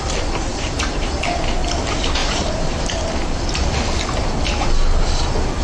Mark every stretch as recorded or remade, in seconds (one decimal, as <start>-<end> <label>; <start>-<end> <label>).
0.0-0.5 recorded; 0.5-1.2 remade; 1.2-2.2 recorded; 2.2-2.8 remade; 2.8-5.6 recorded